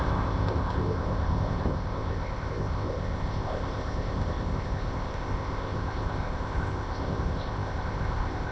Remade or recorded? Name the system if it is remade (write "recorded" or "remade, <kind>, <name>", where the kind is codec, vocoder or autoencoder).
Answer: remade, codec, ZipCodec